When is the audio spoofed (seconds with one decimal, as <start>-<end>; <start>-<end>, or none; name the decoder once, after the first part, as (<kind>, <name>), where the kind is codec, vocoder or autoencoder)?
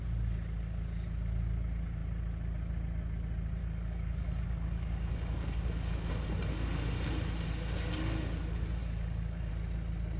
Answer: 3.6-6.1 (codec, DAC); 8.8-9.5